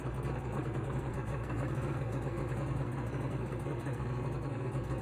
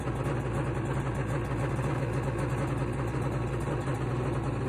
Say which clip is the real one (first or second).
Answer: second